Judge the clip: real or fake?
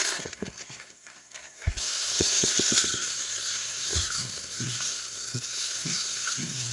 fake